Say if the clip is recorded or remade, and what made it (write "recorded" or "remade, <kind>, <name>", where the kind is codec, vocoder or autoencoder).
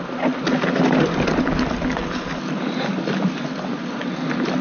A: recorded